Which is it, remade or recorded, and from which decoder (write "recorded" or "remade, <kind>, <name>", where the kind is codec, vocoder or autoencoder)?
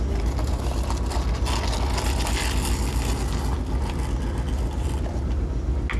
recorded